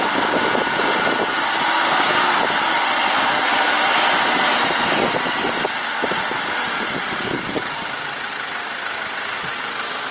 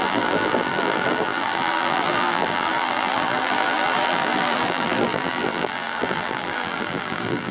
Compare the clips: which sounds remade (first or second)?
second